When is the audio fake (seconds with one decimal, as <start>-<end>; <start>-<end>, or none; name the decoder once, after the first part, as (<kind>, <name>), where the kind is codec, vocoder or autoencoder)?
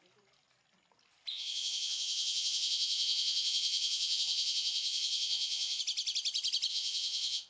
1.3-5.8 (vocoder, Vocos); 6.7-7.5